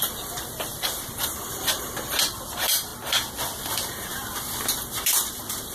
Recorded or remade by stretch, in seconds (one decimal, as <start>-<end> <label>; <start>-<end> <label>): 0.0-2.9 remade; 2.9-3.6 recorded; 3.6-5.7 remade